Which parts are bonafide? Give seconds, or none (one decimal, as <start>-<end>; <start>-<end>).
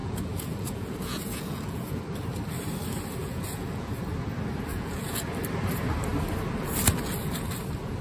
2.0-3.2; 4.0-4.7; 5.2-8.0